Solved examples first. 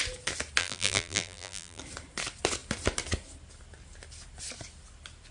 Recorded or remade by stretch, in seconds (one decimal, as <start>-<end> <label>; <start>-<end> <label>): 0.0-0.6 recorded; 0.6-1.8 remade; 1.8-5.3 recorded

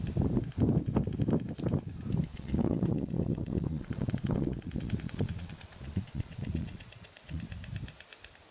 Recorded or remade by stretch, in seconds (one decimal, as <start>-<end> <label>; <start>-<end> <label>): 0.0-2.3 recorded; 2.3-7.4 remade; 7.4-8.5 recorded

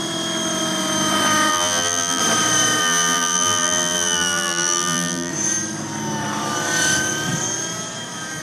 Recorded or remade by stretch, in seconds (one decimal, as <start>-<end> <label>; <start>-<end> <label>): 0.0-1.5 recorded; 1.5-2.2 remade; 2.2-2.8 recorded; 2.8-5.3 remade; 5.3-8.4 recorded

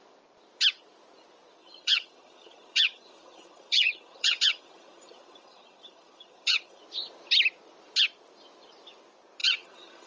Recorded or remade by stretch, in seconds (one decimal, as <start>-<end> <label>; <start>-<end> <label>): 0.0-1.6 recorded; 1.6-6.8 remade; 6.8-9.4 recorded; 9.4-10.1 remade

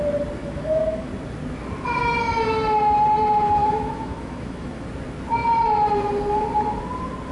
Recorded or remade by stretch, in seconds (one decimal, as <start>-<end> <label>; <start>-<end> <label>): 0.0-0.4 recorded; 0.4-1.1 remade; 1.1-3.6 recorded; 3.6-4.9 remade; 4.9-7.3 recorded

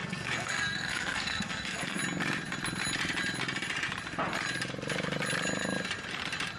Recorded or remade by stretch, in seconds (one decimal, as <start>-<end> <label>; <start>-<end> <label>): 0.0-2.0 remade; 2.0-6.6 recorded